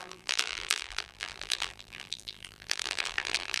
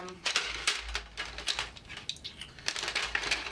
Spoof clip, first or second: first